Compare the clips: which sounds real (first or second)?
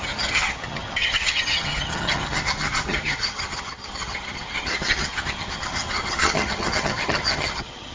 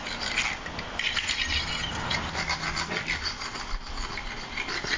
second